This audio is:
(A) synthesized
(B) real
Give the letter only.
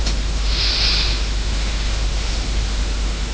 A